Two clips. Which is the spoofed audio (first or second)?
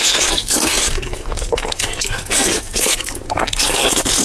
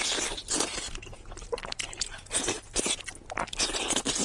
first